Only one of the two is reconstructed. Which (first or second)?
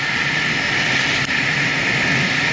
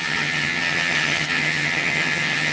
second